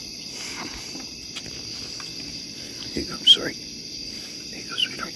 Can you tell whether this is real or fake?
fake